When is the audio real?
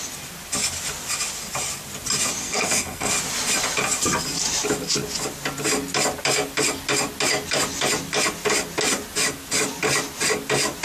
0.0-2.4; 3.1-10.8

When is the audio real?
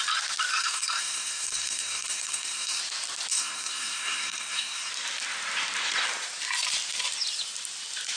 0.0-0.5; 2.8-3.3; 4.9-8.2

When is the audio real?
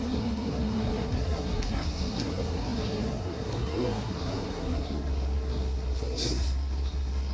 none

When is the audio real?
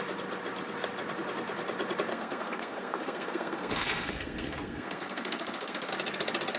0.0-2.1; 5.9-6.6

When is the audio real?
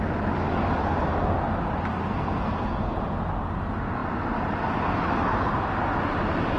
0.0-1.9; 3.0-6.6